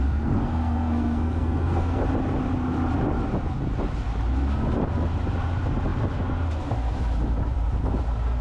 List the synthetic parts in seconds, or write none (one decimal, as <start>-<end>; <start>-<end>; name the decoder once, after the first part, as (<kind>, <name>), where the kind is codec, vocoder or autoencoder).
0.0-2.0 (codec, SNAC)

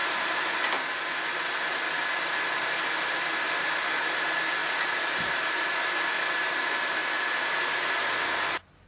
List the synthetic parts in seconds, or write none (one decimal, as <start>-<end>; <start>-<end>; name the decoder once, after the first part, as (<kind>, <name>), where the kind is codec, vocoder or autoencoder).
7.0-7.6 (vocoder, BigVGAN v2)

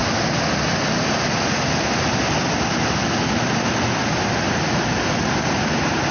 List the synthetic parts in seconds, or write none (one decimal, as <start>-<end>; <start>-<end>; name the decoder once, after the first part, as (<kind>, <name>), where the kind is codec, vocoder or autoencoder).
none

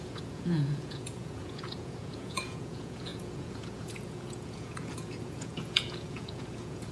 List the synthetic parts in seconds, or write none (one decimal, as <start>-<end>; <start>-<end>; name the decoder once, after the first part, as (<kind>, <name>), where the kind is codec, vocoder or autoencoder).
0.0-6.9 (vocoder, Vocos)

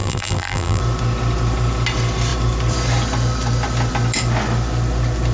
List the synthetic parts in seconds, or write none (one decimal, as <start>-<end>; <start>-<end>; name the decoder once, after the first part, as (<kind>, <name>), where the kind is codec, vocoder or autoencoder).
0.0-0.8 (vocoder, BigVGAN v2)

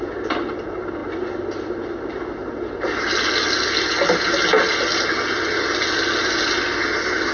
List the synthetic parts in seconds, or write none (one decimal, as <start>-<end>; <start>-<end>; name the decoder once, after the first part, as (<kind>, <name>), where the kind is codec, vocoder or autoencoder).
none